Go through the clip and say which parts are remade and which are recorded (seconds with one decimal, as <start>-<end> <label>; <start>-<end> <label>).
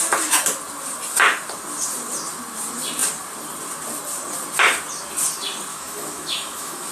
0.0-5.7 recorded; 5.7-6.9 remade